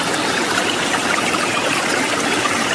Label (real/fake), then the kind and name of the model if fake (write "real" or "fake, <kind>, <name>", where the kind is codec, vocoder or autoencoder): fake, vocoder, BigVGAN v2